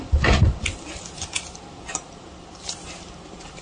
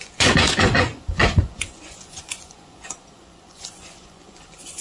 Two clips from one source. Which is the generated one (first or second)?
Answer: second